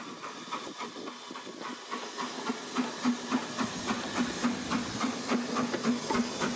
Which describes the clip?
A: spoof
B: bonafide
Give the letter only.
B